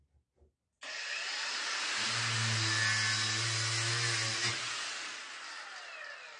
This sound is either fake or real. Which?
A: real